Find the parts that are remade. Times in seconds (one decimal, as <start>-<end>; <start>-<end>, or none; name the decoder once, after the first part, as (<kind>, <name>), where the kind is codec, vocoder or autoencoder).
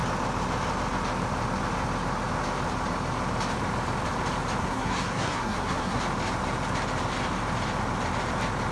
4.6-6.0 (codec, SNAC)